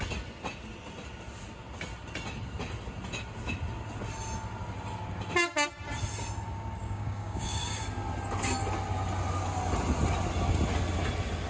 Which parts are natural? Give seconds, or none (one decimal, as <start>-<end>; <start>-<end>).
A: 0.0-6.8; 7.8-11.5